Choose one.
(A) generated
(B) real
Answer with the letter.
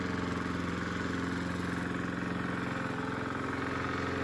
B